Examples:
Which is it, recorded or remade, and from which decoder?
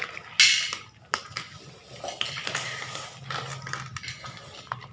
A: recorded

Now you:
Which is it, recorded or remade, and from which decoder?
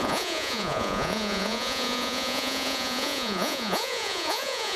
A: remade, vocoder, Vocos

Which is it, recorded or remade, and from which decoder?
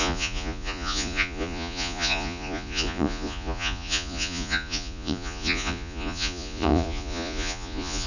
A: remade, vocoder, Vocos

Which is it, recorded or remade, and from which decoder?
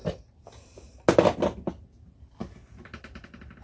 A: recorded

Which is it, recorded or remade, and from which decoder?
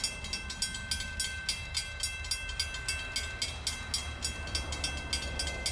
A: recorded